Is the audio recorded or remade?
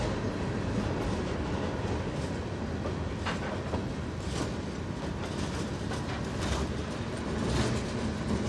recorded